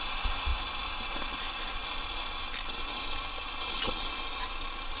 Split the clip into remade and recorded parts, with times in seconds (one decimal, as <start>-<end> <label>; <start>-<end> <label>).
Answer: 0.0-5.0 recorded